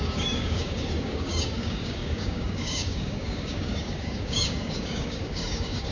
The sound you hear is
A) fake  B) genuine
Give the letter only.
A